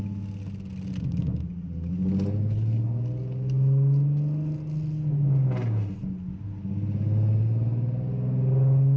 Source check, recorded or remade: recorded